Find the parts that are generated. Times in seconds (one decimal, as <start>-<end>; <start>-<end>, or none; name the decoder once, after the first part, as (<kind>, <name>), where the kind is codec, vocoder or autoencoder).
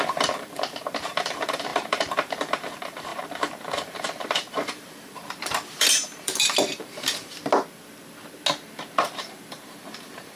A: 0.0-7.4 (vocoder, BigVGAN v2); 9.0-10.4